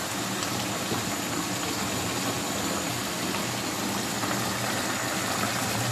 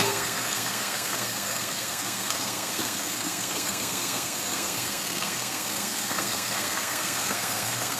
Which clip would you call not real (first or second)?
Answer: second